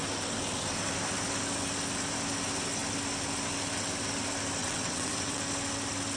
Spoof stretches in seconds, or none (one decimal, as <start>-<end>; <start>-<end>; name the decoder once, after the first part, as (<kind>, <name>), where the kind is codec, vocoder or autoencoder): 4.6-5.4 (vocoder, WaveNeXt)